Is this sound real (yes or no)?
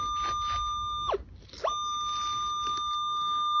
yes